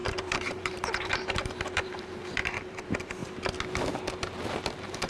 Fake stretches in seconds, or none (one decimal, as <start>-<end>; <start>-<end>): 0.0-3.2; 4.5-5.1